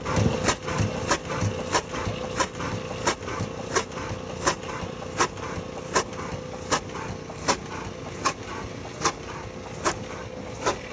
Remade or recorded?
recorded